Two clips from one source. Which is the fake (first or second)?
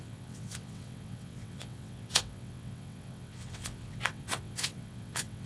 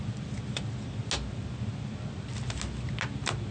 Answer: first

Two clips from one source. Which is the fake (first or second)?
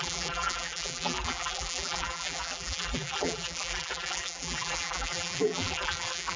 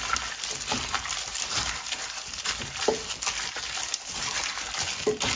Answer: first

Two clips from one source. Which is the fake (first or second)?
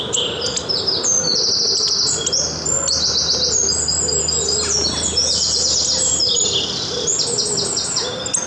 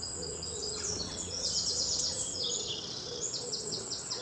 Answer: second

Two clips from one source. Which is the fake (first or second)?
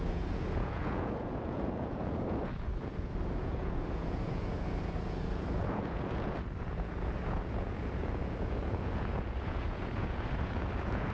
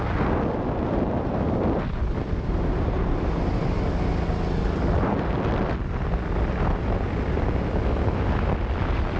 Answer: first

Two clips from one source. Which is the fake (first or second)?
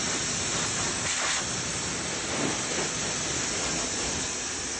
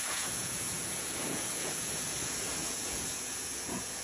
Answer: second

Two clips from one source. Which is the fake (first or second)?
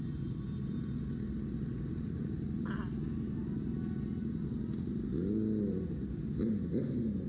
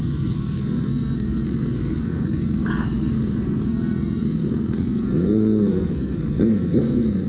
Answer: second